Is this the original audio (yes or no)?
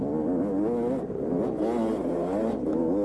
yes